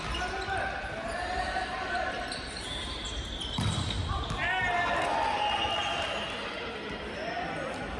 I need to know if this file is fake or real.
real